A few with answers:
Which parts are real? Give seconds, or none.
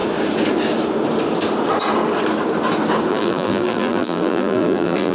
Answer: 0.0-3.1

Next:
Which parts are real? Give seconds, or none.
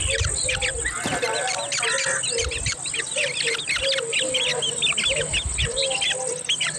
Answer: 0.0-6.8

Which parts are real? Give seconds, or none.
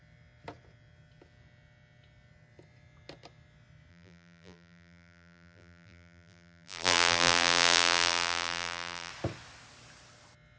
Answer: 0.0-3.9; 9.1-10.6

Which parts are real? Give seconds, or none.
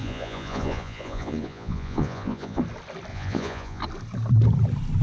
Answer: 2.6-3.1; 3.8-5.0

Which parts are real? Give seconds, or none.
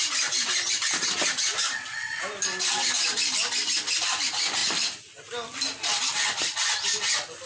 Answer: 0.0-7.5